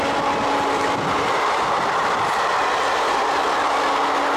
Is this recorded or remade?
recorded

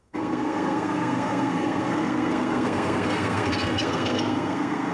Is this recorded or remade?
remade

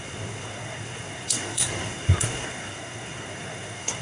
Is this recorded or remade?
remade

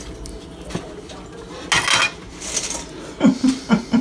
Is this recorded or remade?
recorded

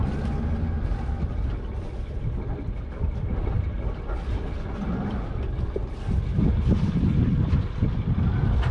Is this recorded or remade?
recorded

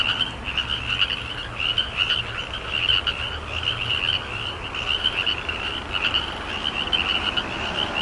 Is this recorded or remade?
recorded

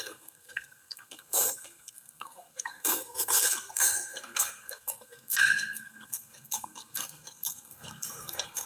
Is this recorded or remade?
remade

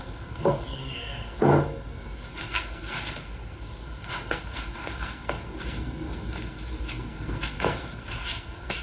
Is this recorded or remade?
remade